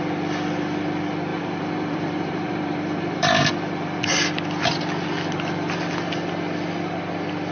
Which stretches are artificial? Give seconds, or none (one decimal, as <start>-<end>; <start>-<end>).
1.3-3.5

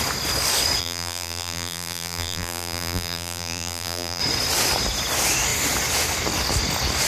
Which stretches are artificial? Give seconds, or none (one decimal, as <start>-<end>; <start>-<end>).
0.8-4.2

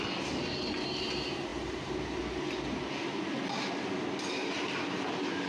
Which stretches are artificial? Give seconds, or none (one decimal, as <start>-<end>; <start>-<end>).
none

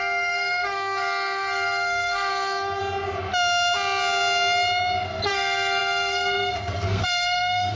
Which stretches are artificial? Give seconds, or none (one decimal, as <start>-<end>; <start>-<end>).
0.0-2.8; 5.3-7.8

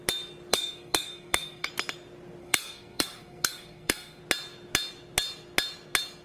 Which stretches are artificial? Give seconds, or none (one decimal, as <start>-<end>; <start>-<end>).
0.5-1.7; 2.4-4.2